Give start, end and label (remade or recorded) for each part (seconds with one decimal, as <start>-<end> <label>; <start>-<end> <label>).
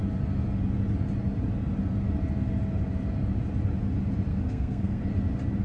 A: 0.0-4.3 recorded; 4.3-5.0 remade; 5.0-5.6 recorded